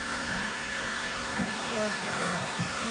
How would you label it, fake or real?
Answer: fake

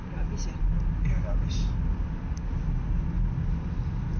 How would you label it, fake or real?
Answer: real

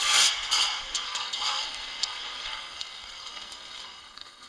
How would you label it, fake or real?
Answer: fake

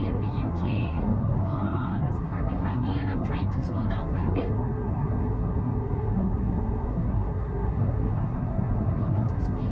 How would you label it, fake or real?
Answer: fake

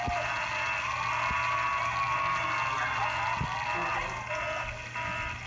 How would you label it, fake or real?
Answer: real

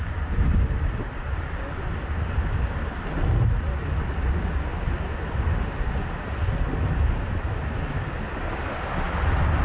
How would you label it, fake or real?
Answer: real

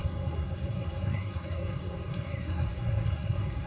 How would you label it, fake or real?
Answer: fake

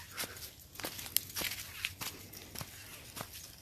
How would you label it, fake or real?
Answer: real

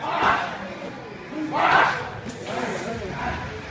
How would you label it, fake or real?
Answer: real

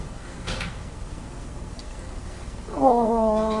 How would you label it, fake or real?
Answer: fake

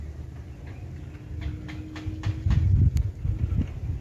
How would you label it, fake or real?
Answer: real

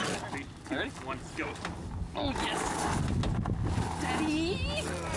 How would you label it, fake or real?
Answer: real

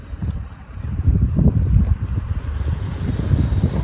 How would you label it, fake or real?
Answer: real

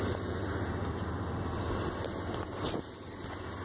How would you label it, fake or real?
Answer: real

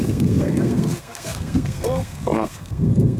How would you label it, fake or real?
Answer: fake